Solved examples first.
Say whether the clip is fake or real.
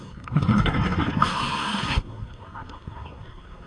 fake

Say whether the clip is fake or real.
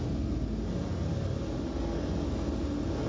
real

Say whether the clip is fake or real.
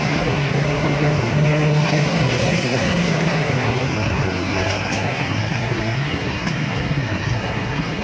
fake